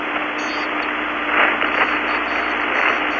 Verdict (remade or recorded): recorded